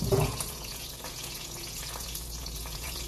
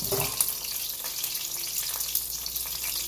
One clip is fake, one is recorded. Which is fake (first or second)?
first